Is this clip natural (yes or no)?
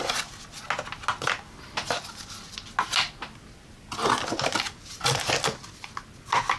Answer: yes